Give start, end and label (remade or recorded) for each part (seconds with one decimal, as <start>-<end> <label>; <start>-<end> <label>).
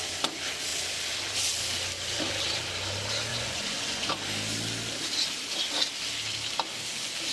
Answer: 0.0-3.3 recorded; 3.3-4.1 remade; 4.1-7.3 recorded